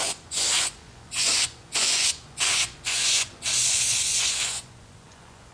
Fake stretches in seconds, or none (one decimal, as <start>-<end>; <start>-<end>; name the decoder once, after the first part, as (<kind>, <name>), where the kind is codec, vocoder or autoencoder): 0.0-5.5 (vocoder, Vocos)